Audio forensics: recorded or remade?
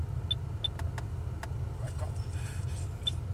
recorded